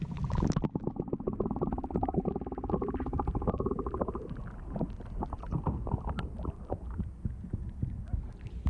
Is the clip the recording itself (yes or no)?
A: yes